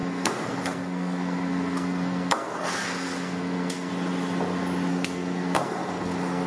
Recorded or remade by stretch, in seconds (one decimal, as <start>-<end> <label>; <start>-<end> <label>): 0.0-3.9 remade; 3.9-4.9 recorded; 4.9-6.5 remade